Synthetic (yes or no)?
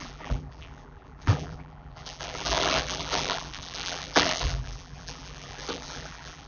yes